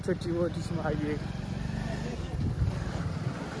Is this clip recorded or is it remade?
recorded